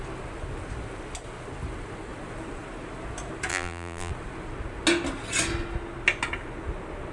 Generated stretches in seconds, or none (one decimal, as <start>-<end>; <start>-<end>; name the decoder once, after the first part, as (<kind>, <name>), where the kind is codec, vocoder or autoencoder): 3.5-4.1 (vocoder, BigVGAN v2)